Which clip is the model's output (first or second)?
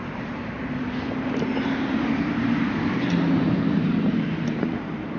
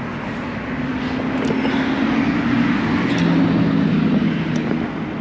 first